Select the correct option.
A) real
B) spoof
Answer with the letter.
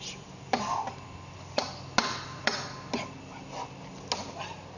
A